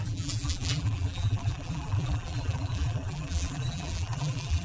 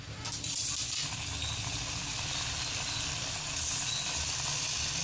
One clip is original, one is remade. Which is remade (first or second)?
first